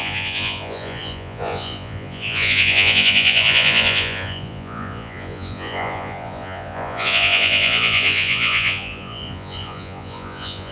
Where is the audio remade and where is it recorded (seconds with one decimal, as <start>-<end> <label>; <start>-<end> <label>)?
0.0-10.7 remade